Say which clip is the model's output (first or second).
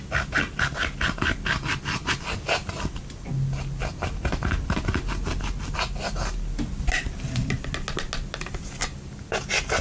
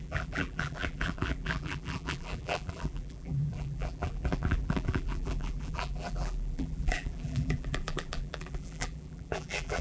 second